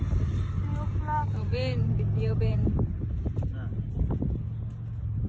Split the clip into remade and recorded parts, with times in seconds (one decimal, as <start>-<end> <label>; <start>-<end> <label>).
0.0-0.7 recorded; 0.7-3.9 remade; 3.9-5.3 recorded

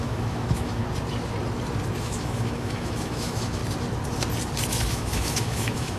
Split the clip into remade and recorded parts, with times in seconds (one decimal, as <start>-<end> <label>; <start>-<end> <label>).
0.0-0.8 remade; 0.8-2.0 recorded; 2.0-3.6 remade; 3.6-4.7 recorded; 4.7-6.0 remade

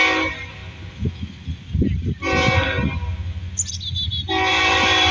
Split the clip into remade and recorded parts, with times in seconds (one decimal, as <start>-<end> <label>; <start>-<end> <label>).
0.0-4.5 recorded; 4.5-5.1 remade

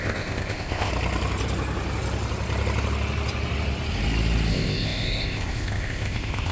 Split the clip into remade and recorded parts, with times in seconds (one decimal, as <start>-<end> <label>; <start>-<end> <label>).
0.0-0.9 remade; 0.9-4.5 recorded; 4.5-6.5 remade

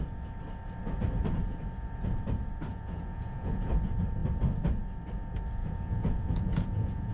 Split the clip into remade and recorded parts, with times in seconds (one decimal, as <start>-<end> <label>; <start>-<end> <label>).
0.0-2.7 recorded; 2.7-3.5 remade; 3.5-5.6 recorded; 5.6-7.1 remade

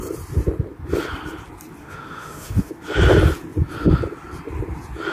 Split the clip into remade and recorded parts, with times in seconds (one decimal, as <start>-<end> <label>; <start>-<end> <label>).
0.0-1.8 recorded; 1.8-2.7 remade; 2.7-5.1 recorded

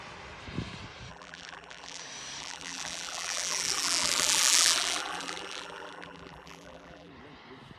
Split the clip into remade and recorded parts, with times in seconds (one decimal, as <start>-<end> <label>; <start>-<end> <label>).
0.0-1.1 recorded; 1.1-2.0 remade; 2.0-2.4 recorded; 2.4-7.1 remade; 7.1-7.8 recorded

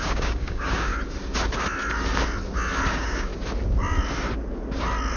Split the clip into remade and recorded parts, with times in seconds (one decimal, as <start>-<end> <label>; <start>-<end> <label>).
0.0-0.9 remade; 0.9-2.9 recorded; 2.9-3.3 remade; 3.3-5.2 recorded